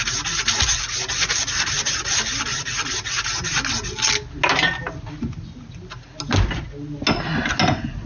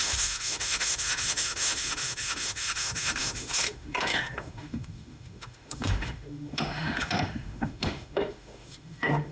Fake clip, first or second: second